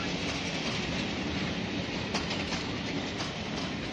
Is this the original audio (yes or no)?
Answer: no